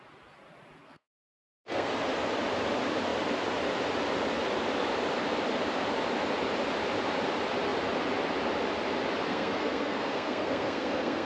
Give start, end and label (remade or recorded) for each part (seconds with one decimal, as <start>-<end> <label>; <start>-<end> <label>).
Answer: 0.0-0.8 recorded; 0.8-1.9 remade; 1.9-9.3 recorded; 9.3-11.3 remade